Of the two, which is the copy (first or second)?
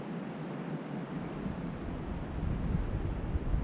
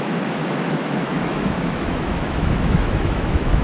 second